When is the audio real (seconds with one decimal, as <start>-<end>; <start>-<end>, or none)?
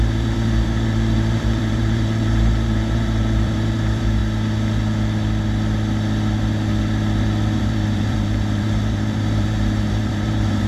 4.2-7.6